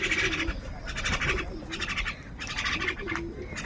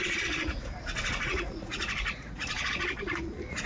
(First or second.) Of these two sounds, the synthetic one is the second